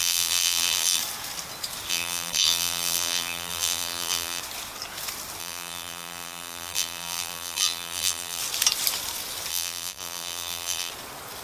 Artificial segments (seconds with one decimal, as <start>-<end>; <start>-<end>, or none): 0.0-1.0; 1.9-4.4; 5.4-8.4; 9.5-10.9